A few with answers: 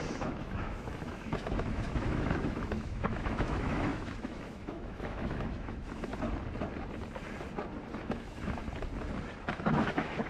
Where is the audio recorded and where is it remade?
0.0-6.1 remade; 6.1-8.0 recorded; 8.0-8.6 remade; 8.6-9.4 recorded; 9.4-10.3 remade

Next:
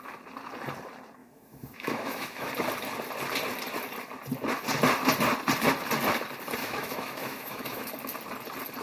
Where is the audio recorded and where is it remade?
0.0-1.2 recorded; 1.2-2.5 remade; 2.5-6.6 recorded; 6.6-7.9 remade; 7.9-8.8 recorded

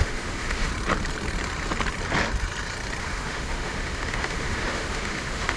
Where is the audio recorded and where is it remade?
0.0-0.7 remade; 0.7-3.0 recorded; 3.0-5.6 remade

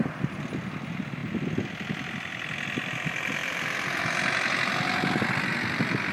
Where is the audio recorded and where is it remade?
0.0-6.1 recorded

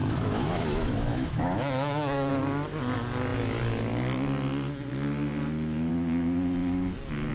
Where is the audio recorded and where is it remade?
0.0-2.3 remade; 2.3-7.3 recorded

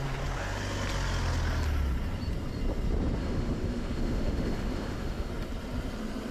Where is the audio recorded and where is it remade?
0.0-3.2 recorded; 3.2-5.3 remade; 5.3-6.3 recorded

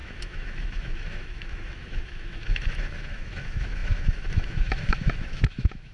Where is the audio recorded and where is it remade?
0.0-5.9 remade